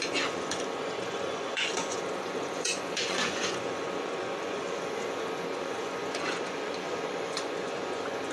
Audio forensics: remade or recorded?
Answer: remade